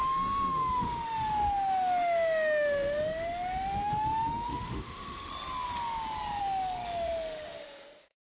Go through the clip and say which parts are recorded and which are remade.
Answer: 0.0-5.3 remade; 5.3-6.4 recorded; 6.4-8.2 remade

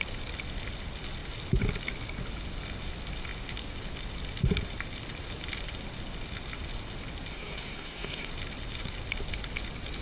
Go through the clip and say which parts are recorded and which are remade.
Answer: 0.0-7.3 recorded; 7.3-8.3 remade; 8.3-10.0 recorded

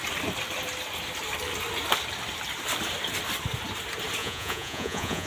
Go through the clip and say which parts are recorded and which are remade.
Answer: 0.0-4.2 recorded; 4.2-5.3 remade

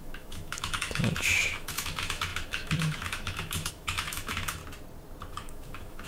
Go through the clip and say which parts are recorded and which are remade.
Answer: 0.0-4.6 remade; 4.6-5.3 recorded; 5.3-6.1 remade

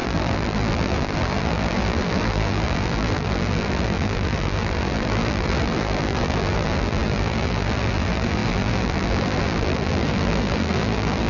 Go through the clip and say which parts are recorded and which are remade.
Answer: 0.0-11.3 remade

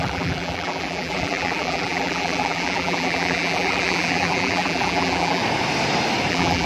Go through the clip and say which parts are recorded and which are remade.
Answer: 0.0-5.4 remade; 5.4-6.3 recorded; 6.3-6.7 remade

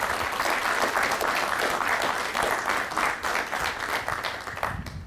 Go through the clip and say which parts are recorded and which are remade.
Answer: 0.0-5.1 recorded

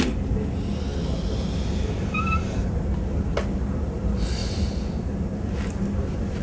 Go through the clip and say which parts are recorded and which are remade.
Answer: 0.0-6.4 recorded